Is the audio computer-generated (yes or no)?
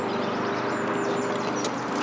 no